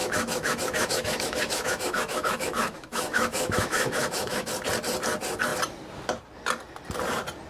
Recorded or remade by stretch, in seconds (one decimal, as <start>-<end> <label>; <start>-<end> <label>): 0.0-4.5 remade; 4.5-7.5 recorded